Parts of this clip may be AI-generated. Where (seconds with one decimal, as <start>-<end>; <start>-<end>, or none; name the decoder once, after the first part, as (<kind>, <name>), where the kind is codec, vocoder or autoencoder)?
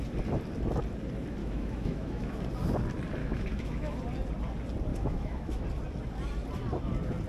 1.4-2.4 (autoencoder, DAC-VAE); 3.2-3.9; 4.9-5.6